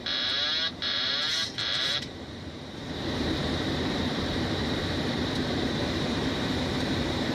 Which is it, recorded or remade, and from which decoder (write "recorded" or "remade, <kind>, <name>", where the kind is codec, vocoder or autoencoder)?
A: remade, vocoder, BigVGAN v2